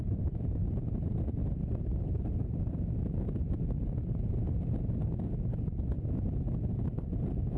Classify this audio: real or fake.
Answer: real